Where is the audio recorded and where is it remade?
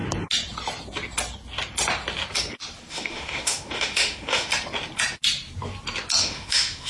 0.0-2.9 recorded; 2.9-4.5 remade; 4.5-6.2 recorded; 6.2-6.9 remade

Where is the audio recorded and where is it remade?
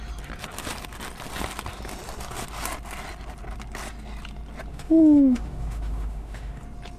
0.0-4.7 recorded; 4.7-6.6 remade; 6.6-7.0 recorded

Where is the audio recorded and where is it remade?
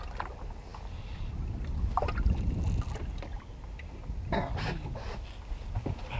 0.0-6.2 recorded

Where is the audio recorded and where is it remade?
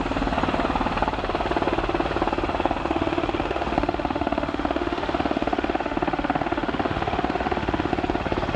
0.0-2.8 recorded; 2.8-7.9 remade; 7.9-8.6 recorded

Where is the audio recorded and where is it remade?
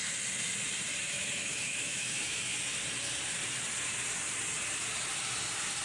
0.0-1.1 recorded; 1.1-2.5 remade; 2.5-5.8 recorded